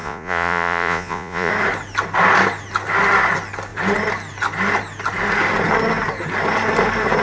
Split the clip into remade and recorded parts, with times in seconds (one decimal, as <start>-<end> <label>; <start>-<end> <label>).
0.0-1.5 remade; 1.5-7.2 recorded